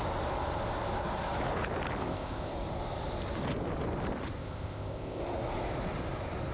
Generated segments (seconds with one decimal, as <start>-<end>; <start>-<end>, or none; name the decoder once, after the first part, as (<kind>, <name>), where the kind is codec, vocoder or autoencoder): 2.0-2.5 (codec, ZipCodec); 4.4-5.2